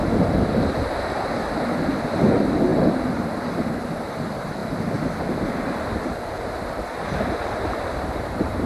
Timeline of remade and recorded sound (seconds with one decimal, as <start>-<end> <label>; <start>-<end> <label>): 0.0-1.4 remade; 1.4-2.1 recorded; 2.1-2.7 remade; 2.7-4.0 recorded; 4.0-4.6 remade; 4.6-8.0 recorded; 8.0-8.7 remade